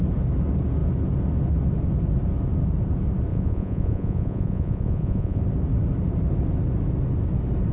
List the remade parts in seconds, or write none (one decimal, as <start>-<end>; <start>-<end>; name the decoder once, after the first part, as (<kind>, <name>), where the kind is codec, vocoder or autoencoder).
3.3-5.4 (vocoder, Vocos)